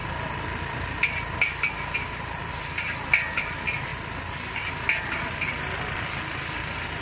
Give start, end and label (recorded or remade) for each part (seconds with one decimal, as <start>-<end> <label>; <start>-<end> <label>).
0.0-7.0 recorded